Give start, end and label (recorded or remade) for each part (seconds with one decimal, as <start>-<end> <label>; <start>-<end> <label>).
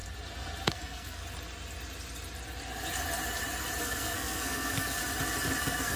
0.0-0.7 recorded; 0.7-1.2 remade; 1.2-3.8 recorded; 3.8-5.0 remade; 5.0-5.6 recorded; 5.6-6.0 remade